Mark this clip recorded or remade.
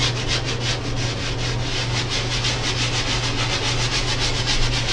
recorded